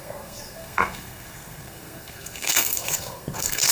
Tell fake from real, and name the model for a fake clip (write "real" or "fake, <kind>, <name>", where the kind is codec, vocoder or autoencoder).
fake, codec, SNAC